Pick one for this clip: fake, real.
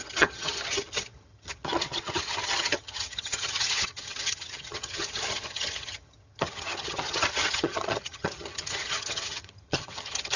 fake